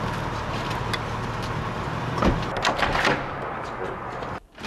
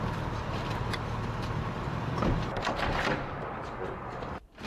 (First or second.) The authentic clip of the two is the first